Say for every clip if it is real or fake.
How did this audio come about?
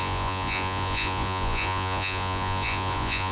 fake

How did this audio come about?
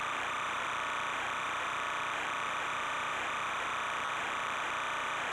fake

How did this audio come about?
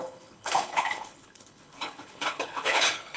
fake